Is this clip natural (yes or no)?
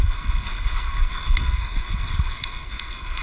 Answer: no